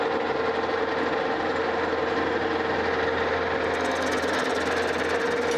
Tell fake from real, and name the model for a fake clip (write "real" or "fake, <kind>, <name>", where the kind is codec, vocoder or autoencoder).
real